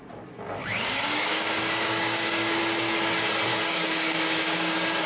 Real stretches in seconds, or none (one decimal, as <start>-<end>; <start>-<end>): 0.0-0.6; 2.6-3.5